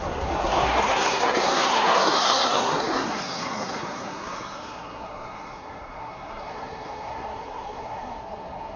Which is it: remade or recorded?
remade